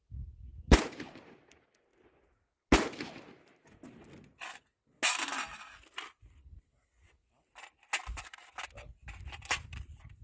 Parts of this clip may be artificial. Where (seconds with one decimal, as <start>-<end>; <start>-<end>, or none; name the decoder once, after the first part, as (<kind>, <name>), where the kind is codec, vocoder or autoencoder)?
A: none